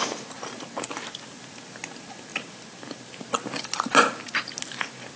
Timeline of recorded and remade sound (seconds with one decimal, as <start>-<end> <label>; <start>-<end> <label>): 0.0-5.2 recorded